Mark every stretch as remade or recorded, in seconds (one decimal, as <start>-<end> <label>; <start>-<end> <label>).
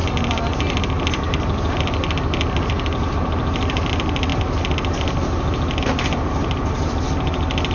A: 0.0-7.7 recorded